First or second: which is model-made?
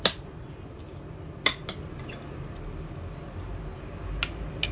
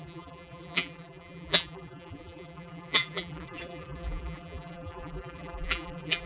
second